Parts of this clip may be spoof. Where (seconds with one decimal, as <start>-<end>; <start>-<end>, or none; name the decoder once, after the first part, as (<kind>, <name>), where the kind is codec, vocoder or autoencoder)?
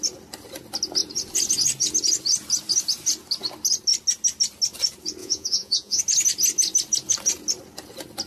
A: 5.2-6.0 (vocoder, Vocos)